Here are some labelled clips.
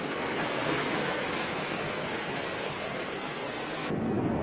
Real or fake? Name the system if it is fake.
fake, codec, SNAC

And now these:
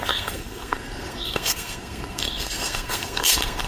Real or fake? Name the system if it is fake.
fake, codec, SNAC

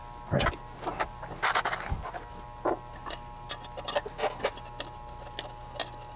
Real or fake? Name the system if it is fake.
real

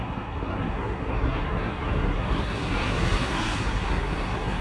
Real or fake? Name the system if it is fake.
fake, codec, SNAC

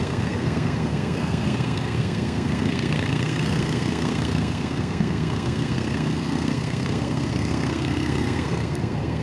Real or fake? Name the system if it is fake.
fake, codec, SNAC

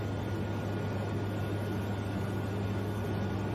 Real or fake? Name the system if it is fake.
real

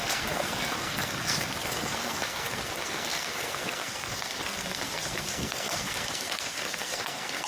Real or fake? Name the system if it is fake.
fake, codec, SNAC